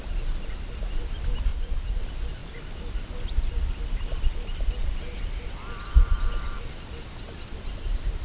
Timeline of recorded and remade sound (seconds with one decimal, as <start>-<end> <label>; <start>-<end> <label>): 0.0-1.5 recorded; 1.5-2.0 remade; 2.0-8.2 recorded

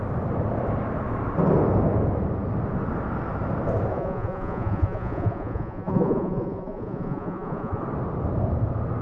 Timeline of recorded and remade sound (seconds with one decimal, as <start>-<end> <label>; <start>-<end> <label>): 0.0-3.9 recorded; 3.9-7.8 remade; 7.8-9.0 recorded

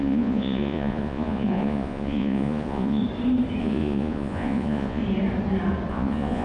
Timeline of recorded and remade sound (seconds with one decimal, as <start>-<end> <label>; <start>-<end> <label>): 0.0-3.0 remade; 3.0-3.6 recorded; 3.6-5.0 remade; 5.0-5.9 recorded; 5.9-6.4 remade

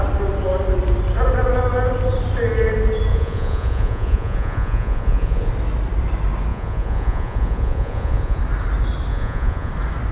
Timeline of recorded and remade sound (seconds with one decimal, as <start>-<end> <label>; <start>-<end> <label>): 0.0-3.1 recorded; 3.1-5.5 remade; 5.5-6.5 recorded; 6.5-8.4 remade; 8.4-9.1 recorded; 9.1-9.7 remade; 9.7-10.1 recorded

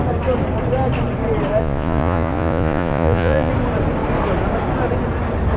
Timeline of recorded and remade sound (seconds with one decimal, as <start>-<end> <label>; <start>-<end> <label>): 0.0-1.6 recorded; 1.6-3.5 remade; 3.5-5.6 recorded